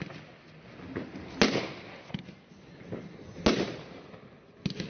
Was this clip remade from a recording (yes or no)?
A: no